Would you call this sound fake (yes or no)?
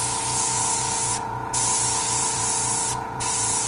yes